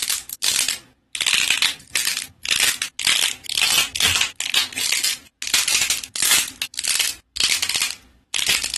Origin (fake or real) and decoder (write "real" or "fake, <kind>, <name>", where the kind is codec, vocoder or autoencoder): real